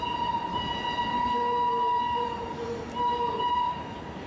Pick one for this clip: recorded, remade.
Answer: remade